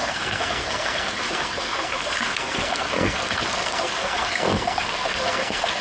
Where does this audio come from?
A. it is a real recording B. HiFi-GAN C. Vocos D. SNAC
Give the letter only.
D